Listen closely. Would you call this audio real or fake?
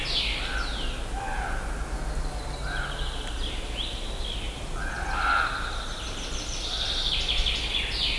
real